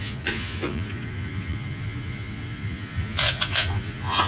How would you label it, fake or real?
fake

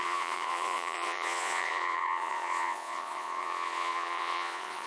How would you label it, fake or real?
fake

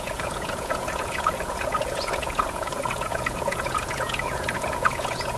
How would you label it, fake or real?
fake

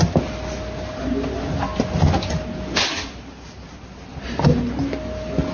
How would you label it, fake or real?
real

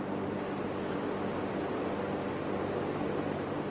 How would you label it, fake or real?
real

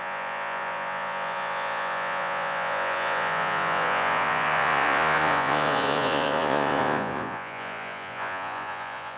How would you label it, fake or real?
fake